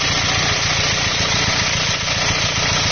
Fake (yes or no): no